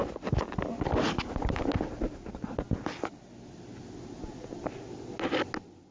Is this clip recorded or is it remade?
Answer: recorded